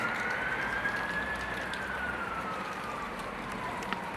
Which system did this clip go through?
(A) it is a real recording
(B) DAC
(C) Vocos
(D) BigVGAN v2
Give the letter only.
D